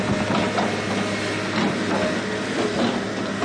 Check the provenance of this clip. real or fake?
real